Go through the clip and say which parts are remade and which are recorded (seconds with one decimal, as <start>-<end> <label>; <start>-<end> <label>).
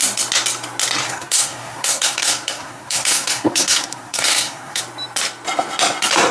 0.0-1.0 recorded; 1.0-4.8 remade; 4.8-6.3 recorded